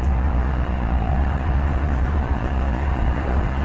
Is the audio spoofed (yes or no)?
yes